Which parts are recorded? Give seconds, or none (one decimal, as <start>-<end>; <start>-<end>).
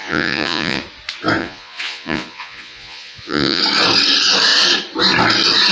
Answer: 0.8-1.4; 3.6-5.7